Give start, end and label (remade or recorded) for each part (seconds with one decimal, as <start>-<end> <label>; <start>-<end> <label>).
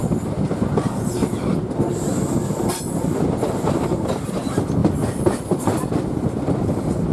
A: 0.0-4.8 recorded; 4.8-6.5 remade; 6.5-7.1 recorded